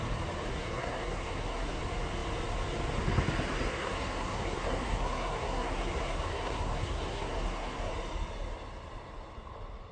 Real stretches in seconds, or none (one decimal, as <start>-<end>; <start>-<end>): 0.0-0.5; 1.8-3.7; 7.9-9.9